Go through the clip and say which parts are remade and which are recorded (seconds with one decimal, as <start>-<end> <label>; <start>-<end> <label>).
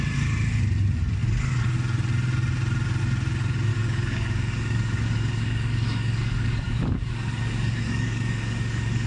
0.0-3.7 recorded; 3.7-9.1 remade